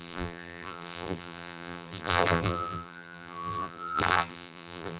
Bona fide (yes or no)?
no